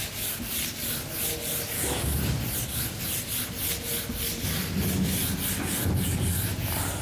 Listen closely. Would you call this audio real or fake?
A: real